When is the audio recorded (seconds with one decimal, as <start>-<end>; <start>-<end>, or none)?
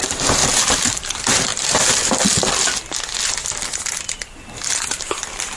0.4-0.9; 1.5-4.9